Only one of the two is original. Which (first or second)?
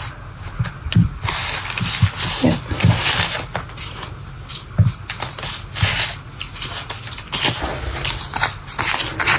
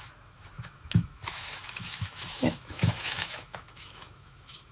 first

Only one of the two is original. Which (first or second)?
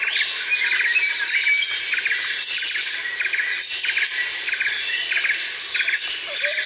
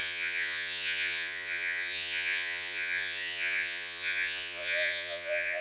first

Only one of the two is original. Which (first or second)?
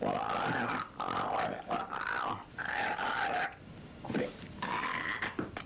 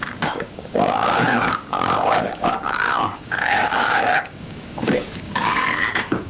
first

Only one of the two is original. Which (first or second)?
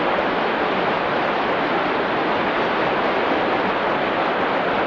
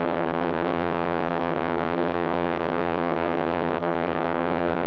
first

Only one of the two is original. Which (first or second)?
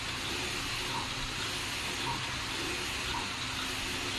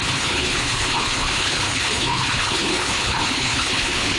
first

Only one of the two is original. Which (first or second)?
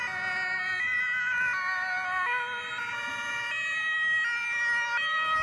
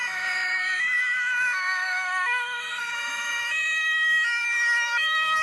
first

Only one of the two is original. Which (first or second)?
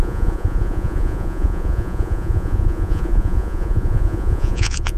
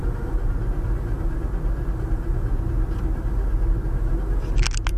second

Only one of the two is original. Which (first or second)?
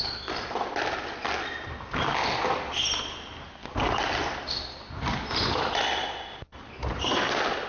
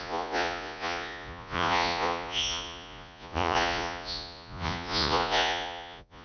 first